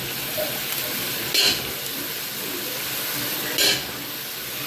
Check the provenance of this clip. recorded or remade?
recorded